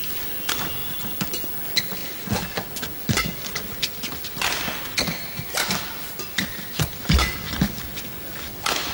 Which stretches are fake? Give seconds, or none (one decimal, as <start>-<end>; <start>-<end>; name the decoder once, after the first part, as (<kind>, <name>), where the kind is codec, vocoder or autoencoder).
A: none